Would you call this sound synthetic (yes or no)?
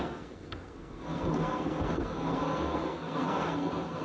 yes